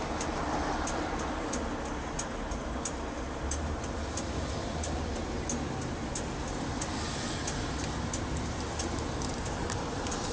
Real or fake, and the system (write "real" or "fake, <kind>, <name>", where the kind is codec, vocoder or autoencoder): real